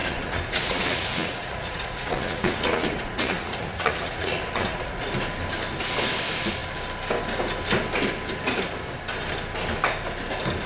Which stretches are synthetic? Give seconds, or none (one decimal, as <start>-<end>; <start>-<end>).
0.0-5.1